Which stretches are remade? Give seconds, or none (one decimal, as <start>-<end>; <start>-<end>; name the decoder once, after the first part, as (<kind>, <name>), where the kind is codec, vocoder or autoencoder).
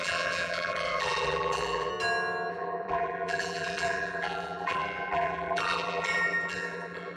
0.0-1.9 (vocoder, BigVGAN v2); 2.5-7.2